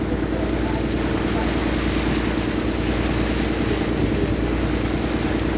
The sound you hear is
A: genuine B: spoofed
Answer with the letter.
A